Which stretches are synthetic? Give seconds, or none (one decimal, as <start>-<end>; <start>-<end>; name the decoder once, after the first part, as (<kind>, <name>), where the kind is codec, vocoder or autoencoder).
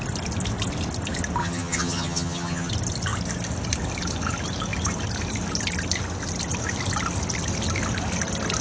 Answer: 1.4-2.7 (vocoder, HiFi-GAN)